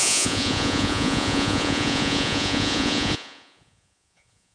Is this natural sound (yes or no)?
no